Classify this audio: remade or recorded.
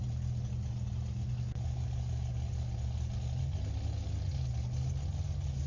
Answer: recorded